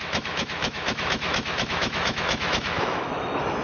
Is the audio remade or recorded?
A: remade